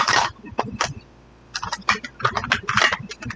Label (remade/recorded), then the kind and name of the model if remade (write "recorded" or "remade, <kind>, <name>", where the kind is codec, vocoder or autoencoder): remade, vocoder, BigVGAN v2